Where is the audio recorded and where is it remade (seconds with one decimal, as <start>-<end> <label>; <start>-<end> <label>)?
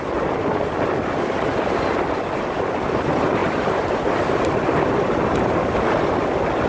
0.0-6.7 recorded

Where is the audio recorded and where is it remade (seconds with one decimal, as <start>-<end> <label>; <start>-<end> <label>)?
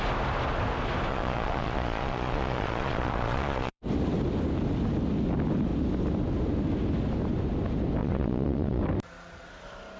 0.0-1.1 recorded; 1.1-3.8 remade; 3.8-8.0 recorded; 8.0-8.8 remade; 8.8-10.0 recorded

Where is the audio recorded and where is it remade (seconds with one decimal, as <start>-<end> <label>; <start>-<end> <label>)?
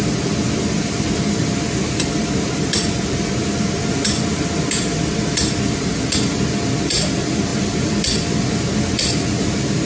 0.0-9.9 recorded